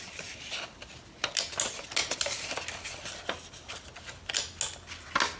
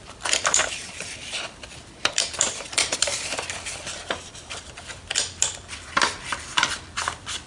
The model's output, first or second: second